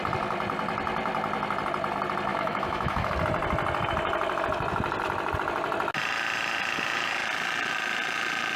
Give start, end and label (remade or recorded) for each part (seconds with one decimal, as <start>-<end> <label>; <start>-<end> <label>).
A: 0.0-2.3 recorded; 2.3-3.1 remade; 3.1-8.6 recorded